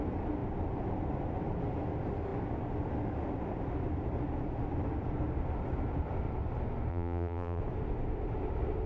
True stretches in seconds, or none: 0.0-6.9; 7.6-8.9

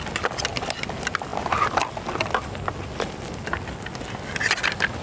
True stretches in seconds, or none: 0.0-5.0

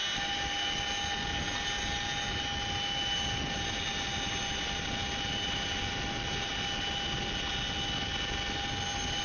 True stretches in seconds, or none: 0.0-9.2

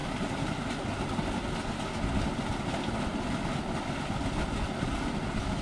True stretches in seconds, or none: 0.0-5.6

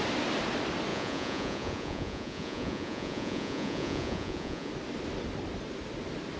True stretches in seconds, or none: 0.0-0.9; 4.7-6.4